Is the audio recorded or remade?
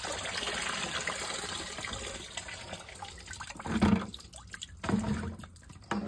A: recorded